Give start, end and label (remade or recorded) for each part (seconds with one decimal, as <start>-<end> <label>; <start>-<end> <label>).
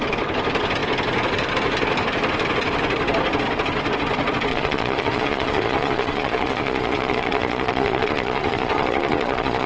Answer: 0.0-4.5 recorded; 4.5-9.7 remade